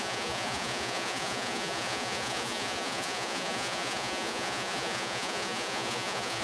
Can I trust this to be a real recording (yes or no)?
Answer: no